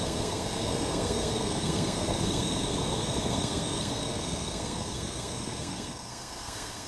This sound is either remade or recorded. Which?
remade